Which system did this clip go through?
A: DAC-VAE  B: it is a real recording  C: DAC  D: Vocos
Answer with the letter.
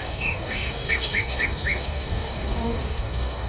C